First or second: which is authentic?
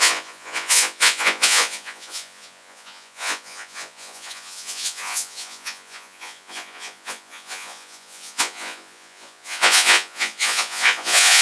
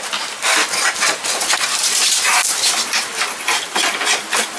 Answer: second